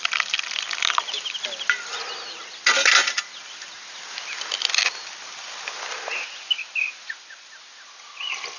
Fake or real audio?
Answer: real